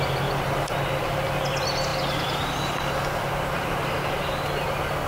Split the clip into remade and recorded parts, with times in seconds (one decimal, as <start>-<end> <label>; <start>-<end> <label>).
0.0-5.1 recorded